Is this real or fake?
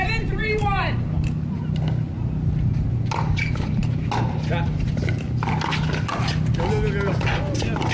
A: real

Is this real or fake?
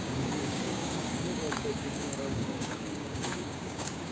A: fake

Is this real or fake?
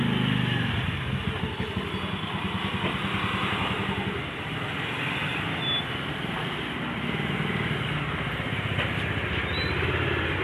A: real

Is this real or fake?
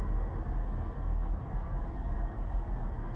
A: fake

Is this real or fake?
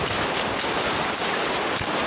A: real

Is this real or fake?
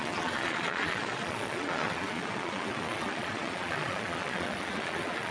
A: fake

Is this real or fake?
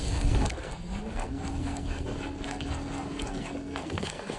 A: fake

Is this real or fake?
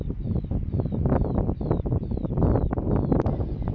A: real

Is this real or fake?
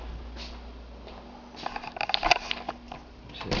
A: real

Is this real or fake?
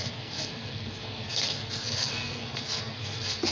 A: fake